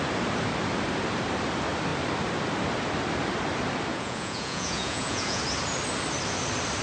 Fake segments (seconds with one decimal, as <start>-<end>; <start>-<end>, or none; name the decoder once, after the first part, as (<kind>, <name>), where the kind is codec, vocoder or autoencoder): 3.9-5.4 (vocoder, Vocos)